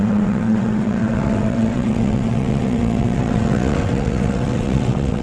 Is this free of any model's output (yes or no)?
no